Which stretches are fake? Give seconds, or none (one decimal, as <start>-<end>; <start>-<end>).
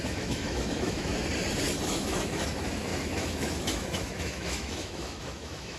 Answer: 0.0-1.1; 1.8-5.8